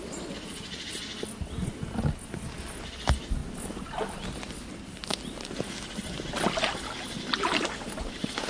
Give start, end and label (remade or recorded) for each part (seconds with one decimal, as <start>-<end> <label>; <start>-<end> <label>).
0.0-8.5 recorded